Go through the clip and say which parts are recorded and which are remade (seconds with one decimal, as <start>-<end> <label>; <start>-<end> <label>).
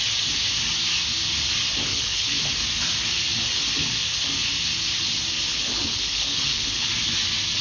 0.0-1.9 recorded; 1.9-2.4 remade; 2.4-5.5 recorded; 5.5-6.9 remade; 6.9-7.6 recorded